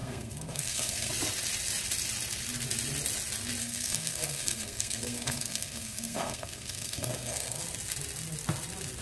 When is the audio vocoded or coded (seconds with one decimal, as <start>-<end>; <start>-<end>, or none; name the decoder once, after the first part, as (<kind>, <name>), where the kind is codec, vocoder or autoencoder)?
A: 0.0-1.1 (codec, SNAC); 3.6-7.6

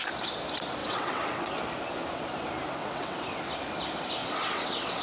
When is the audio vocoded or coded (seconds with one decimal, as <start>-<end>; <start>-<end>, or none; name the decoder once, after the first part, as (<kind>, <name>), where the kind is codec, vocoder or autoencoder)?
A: 0.8-1.5 (vocoder, WaveNeXt); 2.8-3.4; 4.2-5.0